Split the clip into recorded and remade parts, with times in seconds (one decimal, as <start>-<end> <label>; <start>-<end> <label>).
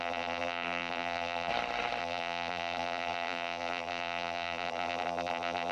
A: 0.0-1.5 remade; 1.5-2.0 recorded; 2.0-5.7 remade